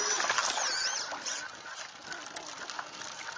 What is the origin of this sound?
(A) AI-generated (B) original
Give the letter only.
B